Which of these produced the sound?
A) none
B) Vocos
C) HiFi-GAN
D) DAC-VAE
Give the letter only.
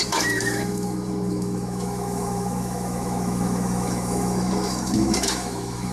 D